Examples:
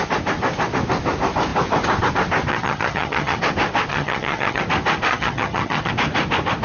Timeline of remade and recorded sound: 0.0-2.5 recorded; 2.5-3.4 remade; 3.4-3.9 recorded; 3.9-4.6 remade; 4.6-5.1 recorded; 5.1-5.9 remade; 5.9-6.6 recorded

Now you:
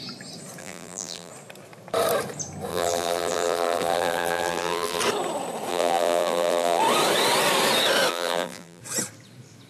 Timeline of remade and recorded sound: 0.0-0.6 recorded; 0.6-1.3 remade; 1.3-2.7 recorded; 2.7-5.0 remade; 5.0-5.7 recorded; 5.7-6.8 remade; 6.8-8.1 recorded; 8.1-8.8 remade; 8.8-9.7 recorded

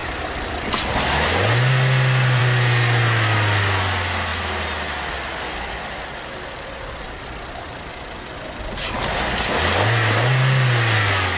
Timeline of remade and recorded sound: 0.0-11.4 recorded